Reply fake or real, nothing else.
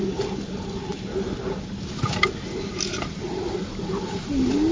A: real